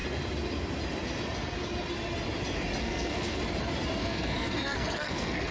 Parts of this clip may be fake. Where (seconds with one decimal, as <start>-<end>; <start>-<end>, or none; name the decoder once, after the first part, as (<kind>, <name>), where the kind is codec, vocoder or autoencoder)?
2.8-3.4 (codec, SNAC); 4.0-5.5